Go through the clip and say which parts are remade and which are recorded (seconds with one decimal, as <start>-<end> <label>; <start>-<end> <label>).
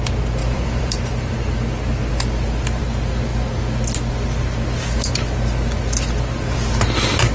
0.0-0.4 recorded; 0.4-1.0 remade; 1.0-7.3 recorded